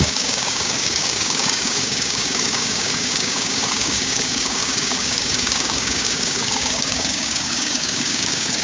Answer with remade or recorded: remade